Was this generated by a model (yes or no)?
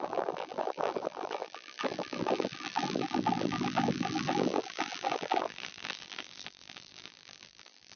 yes